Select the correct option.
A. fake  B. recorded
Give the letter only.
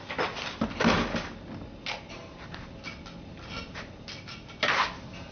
B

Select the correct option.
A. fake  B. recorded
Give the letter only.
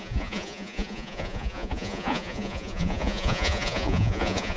A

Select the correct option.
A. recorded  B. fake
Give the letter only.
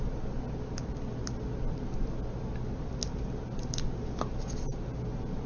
A